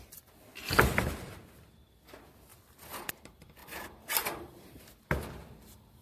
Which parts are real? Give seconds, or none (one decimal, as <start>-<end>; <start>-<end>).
0.0-0.5; 1.4-3.6; 4.8-6.0